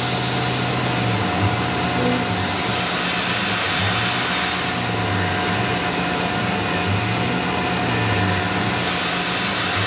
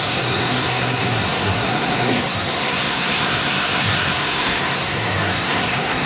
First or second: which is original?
first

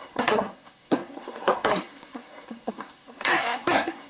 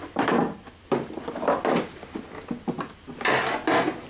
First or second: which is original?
second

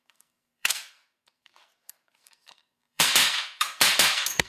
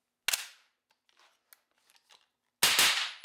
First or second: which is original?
second